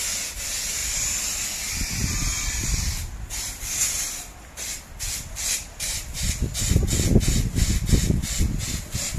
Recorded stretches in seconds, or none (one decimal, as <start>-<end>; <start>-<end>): 0.0-2.3; 6.7-9.2